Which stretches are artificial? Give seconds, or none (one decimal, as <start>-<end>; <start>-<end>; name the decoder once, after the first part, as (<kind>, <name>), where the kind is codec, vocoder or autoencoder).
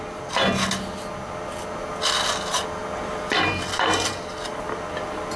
none